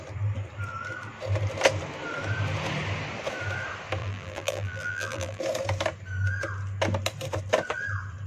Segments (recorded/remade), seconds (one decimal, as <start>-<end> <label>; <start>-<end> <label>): 0.0-4.0 recorded; 4.0-5.4 remade; 5.4-8.3 recorded